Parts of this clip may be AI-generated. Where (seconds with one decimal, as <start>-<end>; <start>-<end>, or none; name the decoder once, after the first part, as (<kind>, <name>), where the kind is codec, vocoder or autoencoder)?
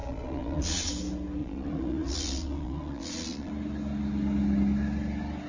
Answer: 0.0-0.9 (vocoder, Vocos); 1.4-3.5